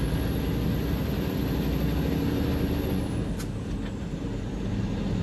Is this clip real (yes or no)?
yes